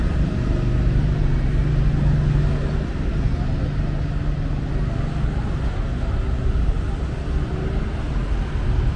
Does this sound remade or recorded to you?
recorded